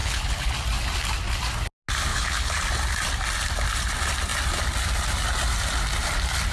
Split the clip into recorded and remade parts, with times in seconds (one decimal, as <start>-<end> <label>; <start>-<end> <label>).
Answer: 0.0-0.5 remade; 0.5-2.1 recorded; 2.1-2.6 remade; 2.6-6.5 recorded